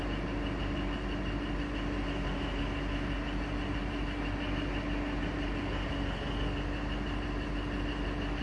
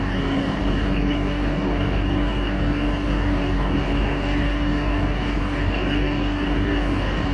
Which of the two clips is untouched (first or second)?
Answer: first